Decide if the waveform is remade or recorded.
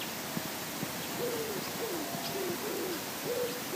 recorded